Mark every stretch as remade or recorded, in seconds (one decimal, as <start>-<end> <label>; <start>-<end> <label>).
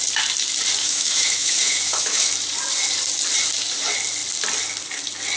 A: 0.0-0.8 recorded; 0.8-2.3 remade; 2.3-5.4 recorded